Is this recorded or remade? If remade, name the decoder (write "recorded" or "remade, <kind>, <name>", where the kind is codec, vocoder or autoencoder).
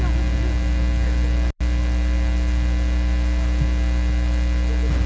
recorded